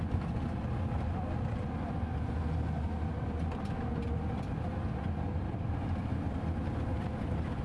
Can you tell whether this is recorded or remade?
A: recorded